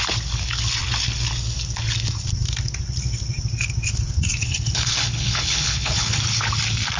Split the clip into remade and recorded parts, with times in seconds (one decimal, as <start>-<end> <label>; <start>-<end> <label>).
0.0-4.4 recorded; 4.4-6.2 remade; 6.2-7.0 recorded